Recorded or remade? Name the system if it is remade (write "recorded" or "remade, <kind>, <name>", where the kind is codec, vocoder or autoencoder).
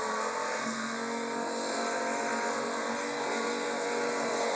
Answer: remade, codec, SNAC